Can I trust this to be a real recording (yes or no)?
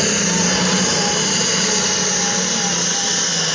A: yes